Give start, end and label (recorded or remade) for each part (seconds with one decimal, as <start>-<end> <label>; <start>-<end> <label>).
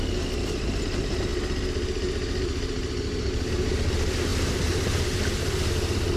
0.0-6.2 recorded